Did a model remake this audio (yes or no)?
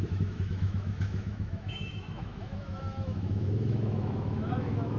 yes